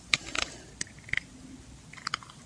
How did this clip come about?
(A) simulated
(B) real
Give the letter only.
B